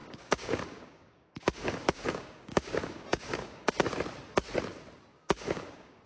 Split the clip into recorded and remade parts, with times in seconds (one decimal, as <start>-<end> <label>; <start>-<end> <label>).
0.0-3.7 remade; 3.7-5.1 recorded; 5.1-6.1 remade